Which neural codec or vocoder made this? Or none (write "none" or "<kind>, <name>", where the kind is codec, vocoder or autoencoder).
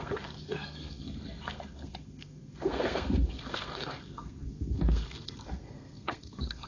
codec, SNAC